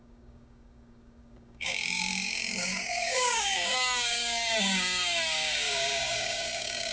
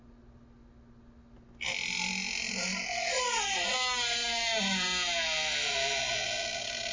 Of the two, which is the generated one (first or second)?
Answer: first